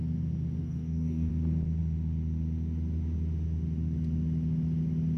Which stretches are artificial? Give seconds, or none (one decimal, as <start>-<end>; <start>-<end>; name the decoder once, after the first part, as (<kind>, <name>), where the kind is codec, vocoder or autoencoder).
0.6-1.3 (codec, DAC)

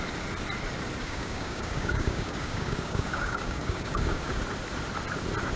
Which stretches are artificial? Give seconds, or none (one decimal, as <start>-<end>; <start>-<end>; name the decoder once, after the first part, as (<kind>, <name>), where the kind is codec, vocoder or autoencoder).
1.0-4.4 (codec, DAC)

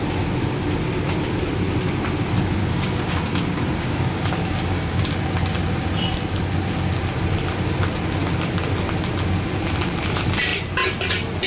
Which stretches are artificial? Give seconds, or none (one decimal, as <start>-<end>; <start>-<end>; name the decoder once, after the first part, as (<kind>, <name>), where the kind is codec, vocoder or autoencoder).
2.6-5.1 (codec, DAC)

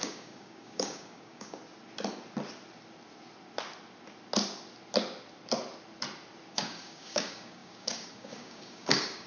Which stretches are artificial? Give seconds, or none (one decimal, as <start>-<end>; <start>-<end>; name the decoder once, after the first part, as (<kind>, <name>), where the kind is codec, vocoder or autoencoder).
0.0-1.6 (codec, DAC); 6.5-9.3

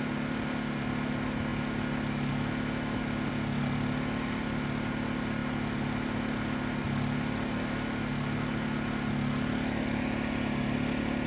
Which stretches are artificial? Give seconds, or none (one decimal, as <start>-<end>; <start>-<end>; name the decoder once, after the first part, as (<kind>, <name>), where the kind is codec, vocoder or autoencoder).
none

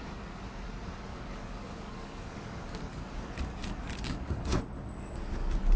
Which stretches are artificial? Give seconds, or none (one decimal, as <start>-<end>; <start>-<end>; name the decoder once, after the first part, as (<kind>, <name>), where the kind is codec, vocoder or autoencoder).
1.1-4.6 (codec, DAC)